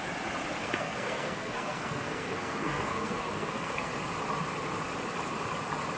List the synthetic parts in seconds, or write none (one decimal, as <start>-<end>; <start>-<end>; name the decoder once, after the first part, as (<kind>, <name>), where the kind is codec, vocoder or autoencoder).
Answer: 0.6-3.9 (codec, SNAC)